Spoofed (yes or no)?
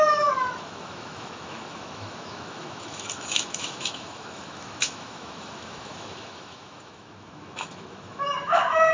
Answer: yes